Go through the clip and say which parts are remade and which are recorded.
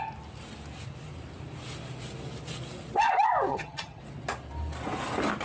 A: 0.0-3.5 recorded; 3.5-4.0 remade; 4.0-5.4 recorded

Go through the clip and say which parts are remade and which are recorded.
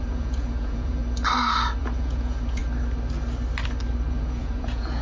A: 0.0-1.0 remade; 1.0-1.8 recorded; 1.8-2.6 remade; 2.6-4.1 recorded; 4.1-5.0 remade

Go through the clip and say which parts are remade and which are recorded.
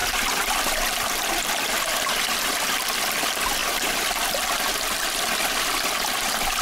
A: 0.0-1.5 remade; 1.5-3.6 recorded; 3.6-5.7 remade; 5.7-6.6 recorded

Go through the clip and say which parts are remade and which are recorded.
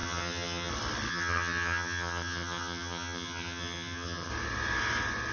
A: 0.0-0.7 remade; 0.7-1.1 recorded; 1.1-4.3 remade; 4.3-5.3 recorded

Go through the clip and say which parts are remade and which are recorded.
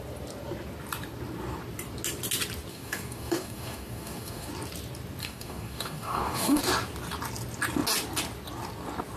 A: 0.0-2.7 recorded; 2.7-4.5 remade; 4.5-5.2 recorded; 5.2-6.6 remade; 6.6-9.2 recorded